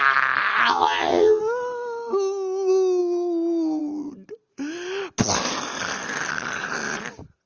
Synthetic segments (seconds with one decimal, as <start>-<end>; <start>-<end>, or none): 0.7-1.4